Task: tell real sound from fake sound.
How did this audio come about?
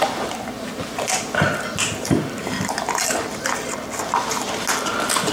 real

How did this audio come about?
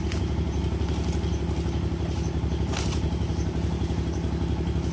real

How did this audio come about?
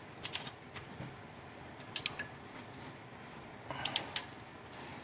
fake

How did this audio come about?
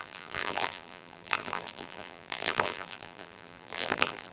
fake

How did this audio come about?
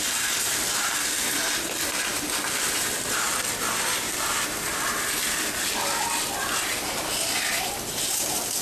fake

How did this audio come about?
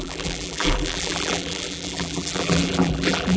fake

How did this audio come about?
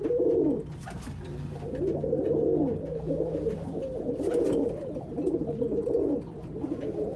real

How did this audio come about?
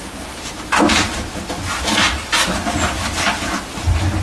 real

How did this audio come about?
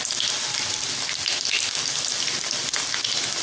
fake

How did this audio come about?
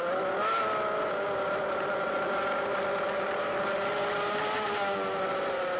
real